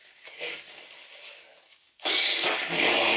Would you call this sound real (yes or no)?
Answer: no